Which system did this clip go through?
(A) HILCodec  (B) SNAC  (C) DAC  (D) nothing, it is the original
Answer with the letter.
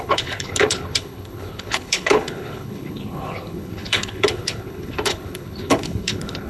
A